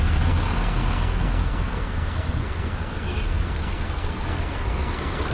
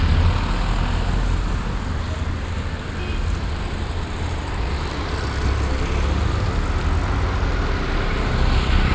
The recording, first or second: second